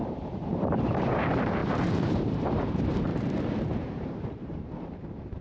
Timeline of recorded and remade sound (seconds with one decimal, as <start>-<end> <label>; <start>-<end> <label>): 0.0-0.5 recorded; 0.5-3.1 remade; 3.1-3.8 recorded; 3.8-5.4 remade